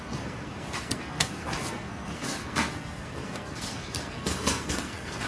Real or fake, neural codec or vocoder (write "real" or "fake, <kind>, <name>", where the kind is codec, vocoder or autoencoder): fake, codec, SNAC